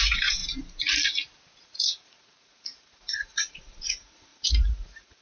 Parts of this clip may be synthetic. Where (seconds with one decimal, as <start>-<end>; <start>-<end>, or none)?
0.0-0.4; 1.6-5.2